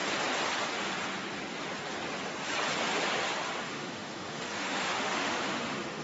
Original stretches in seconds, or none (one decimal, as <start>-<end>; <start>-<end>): 0.0-3.6